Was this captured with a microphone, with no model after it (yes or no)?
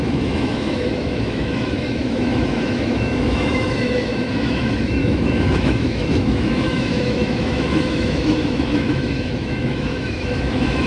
no